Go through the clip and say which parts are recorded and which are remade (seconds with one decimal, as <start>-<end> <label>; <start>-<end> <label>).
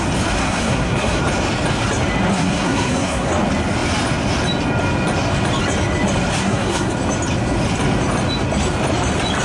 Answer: 0.0-0.4 recorded; 0.4-1.2 remade; 1.2-2.3 recorded; 2.3-3.3 remade; 3.3-6.4 recorded; 6.4-6.9 remade; 6.9-9.4 recorded